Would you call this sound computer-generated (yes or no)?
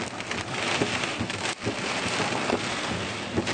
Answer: no